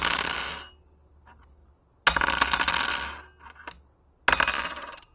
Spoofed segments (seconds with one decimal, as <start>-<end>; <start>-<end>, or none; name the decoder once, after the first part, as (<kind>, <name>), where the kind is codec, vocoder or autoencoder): none